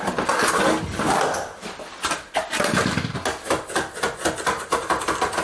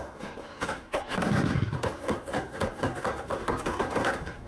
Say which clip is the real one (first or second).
first